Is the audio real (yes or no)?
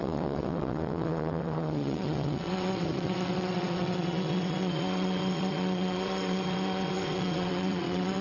no